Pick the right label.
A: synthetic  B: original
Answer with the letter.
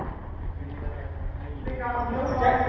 B